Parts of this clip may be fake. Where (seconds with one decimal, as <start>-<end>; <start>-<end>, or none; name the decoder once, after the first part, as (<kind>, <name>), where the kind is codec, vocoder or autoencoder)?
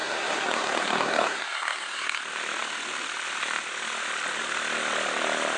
0.0-2.2 (codec, SNAC)